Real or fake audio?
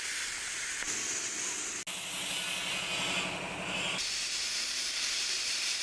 real